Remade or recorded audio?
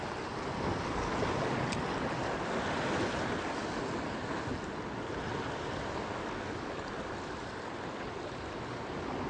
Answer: recorded